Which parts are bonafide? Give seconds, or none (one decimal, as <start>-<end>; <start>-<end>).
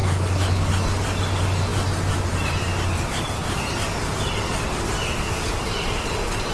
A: 0.7-6.5